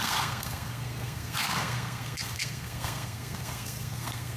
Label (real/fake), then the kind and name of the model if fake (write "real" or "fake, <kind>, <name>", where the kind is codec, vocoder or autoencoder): fake, codec, SNAC